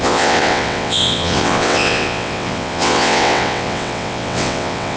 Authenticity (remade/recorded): remade